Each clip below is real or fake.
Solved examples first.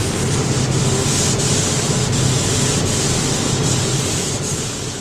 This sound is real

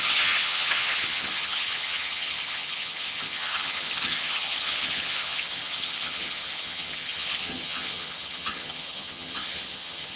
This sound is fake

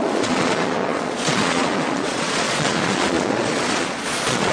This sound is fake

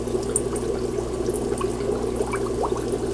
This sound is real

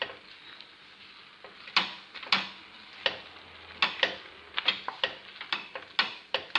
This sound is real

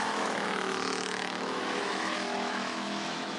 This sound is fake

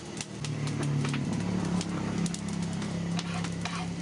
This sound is real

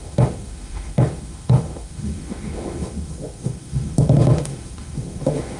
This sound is fake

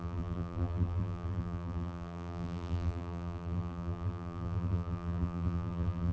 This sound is fake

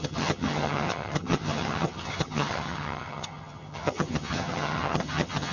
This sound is fake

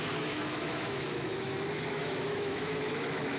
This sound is fake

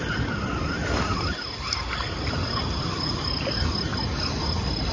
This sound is real